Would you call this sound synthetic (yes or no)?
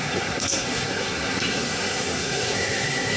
yes